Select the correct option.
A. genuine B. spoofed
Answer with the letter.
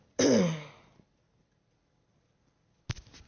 A